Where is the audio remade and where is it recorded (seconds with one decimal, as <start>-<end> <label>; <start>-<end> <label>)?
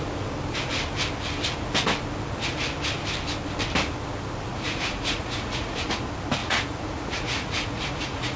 0.0-4.5 recorded; 4.5-6.0 remade; 6.0-6.4 recorded; 6.4-8.4 remade